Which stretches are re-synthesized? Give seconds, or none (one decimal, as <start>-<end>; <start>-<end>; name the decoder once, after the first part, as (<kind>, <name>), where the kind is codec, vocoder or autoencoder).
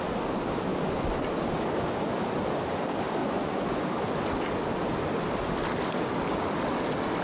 3.2-3.8 (vocoder, Vocos)